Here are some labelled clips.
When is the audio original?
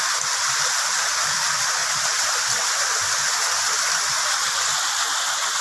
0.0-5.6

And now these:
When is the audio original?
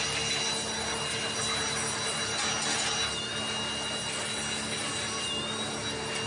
0.0-6.3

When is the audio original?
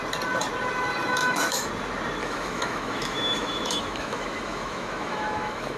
0.0-1.2; 1.7-2.2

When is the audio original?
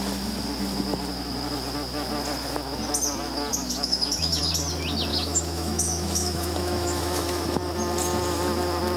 0.0-3.5; 4.4-5.1; 7.6-9.0